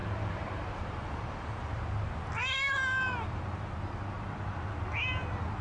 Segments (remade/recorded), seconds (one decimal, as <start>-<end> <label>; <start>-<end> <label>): 0.0-1.8 remade; 1.8-2.4 recorded; 2.4-3.7 remade; 3.7-5.6 recorded